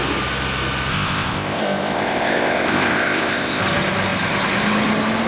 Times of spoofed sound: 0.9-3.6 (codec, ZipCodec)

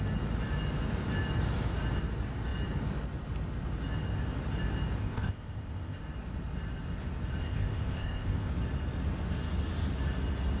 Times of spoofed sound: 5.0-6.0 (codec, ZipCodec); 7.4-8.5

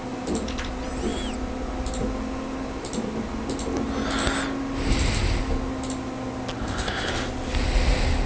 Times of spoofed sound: 6.6-7.1 (codec, ZipCodec)

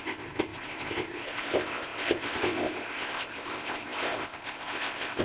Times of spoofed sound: 0.0-5.2 (codec, ZipCodec)

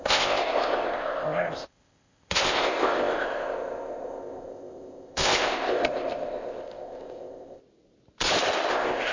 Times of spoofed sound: 0.0-7.6 (codec, ZipCodec); 8.7-9.1

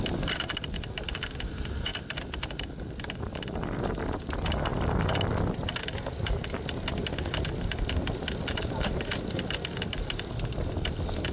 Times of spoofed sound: none

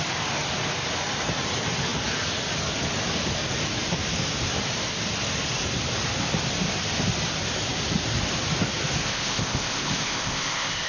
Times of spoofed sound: 9.0-10.9 (codec, ZipCodec)

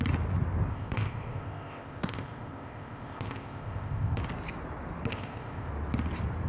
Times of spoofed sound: 0.7-4.2 (codec, ZipCodec); 5.1-5.7